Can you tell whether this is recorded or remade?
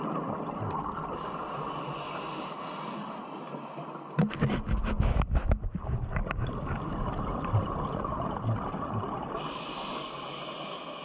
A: recorded